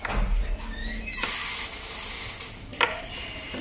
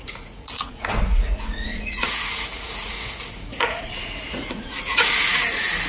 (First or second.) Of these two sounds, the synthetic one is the second